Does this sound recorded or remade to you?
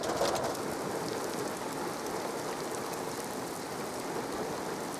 recorded